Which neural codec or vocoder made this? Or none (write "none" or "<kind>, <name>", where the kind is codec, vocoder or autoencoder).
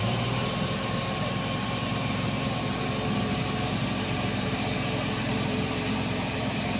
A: vocoder, BigVGAN v2